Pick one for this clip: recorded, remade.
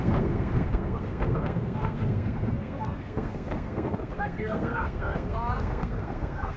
remade